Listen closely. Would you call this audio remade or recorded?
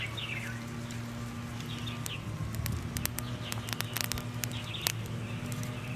recorded